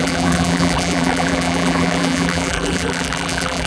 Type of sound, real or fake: fake